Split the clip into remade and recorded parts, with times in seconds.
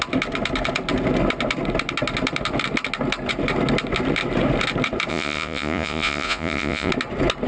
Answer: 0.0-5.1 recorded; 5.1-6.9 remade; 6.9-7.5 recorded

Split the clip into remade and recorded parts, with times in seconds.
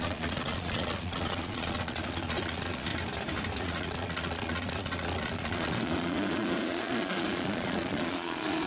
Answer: 0.0-2.9 remade; 2.9-3.6 recorded; 3.6-8.7 remade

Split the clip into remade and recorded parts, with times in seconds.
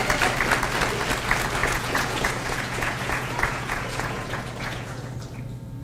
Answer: 0.0-1.6 recorded; 1.6-5.1 remade; 5.1-5.8 recorded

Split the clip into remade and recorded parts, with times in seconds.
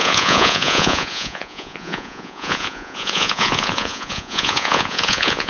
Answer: 0.0-5.5 remade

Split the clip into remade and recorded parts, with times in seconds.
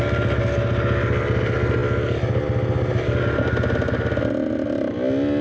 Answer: 0.0-5.4 recorded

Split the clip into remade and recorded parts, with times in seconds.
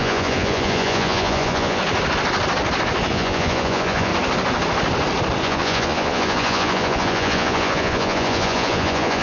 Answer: 0.0-1.8 remade; 1.8-3.1 recorded; 3.1-4.1 remade; 4.1-5.4 recorded; 5.4-9.2 remade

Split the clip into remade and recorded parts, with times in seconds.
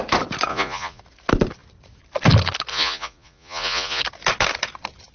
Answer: 0.0-0.5 recorded; 0.5-1.0 remade; 1.0-2.7 recorded; 2.7-4.0 remade; 4.0-5.1 recorded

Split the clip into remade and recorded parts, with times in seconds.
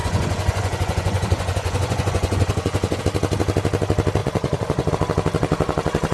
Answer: 0.0-3.0 remade; 3.0-4.2 recorded; 4.2-4.9 remade; 4.9-6.1 recorded